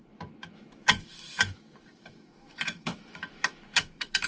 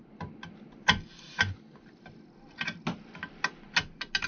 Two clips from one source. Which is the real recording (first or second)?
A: second